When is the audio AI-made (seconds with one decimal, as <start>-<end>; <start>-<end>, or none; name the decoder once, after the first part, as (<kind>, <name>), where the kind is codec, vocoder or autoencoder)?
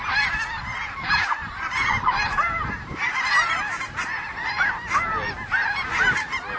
0.7-4.7 (vocoder, BigVGAN v2)